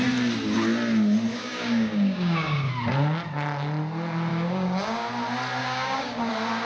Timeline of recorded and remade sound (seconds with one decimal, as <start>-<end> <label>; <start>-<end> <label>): 0.0-1.3 recorded; 1.3-2.7 remade; 2.7-4.3 recorded; 4.3-5.1 remade; 5.1-5.6 recorded; 5.6-6.3 remade; 6.3-6.7 recorded